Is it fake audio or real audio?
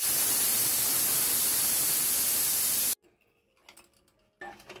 real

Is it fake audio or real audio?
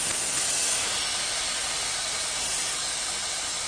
real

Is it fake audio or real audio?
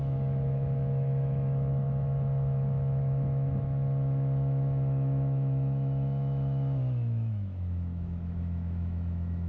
fake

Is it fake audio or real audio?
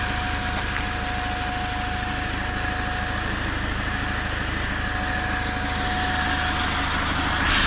real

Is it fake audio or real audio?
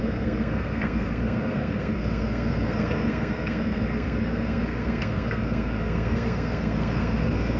fake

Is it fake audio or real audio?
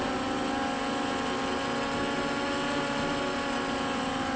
real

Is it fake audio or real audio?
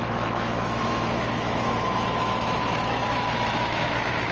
fake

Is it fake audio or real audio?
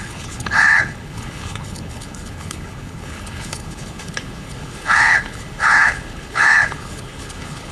fake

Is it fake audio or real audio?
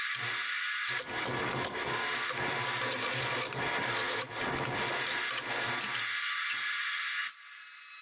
real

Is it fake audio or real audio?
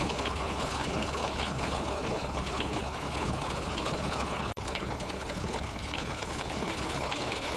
fake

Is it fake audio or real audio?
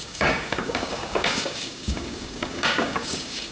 fake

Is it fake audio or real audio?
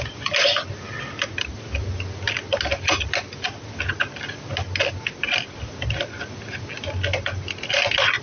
real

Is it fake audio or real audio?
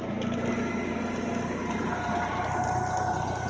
real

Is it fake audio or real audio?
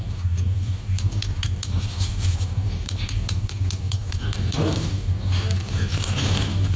fake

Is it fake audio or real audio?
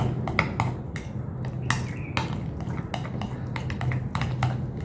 real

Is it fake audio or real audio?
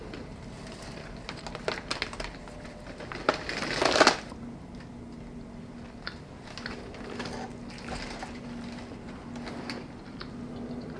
real